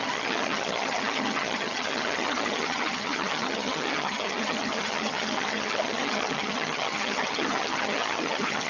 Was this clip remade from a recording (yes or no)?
yes